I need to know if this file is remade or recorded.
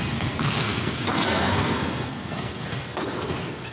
remade